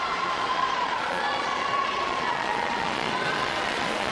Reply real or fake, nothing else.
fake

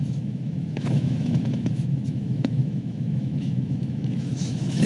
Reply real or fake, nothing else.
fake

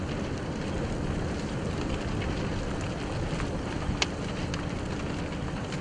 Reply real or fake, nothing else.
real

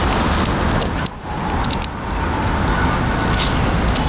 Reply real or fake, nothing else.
real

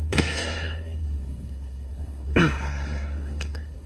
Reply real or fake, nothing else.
fake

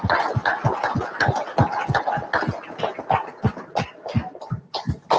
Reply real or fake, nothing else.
real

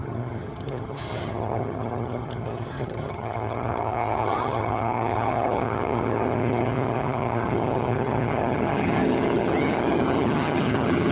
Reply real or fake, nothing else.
fake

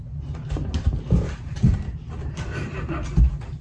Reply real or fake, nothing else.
real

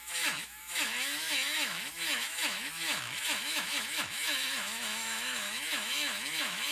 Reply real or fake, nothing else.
fake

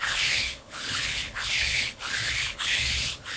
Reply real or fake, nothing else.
fake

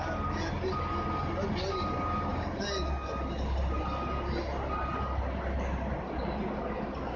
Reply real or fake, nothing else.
real